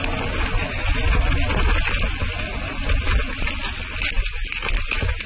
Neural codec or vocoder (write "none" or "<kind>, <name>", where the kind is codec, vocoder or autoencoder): none